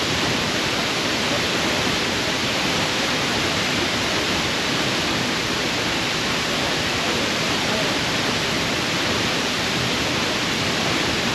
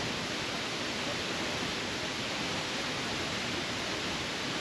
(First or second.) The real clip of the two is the second